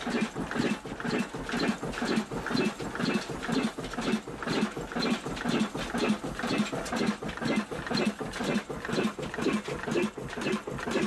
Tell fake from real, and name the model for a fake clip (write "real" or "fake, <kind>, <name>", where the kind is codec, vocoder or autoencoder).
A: real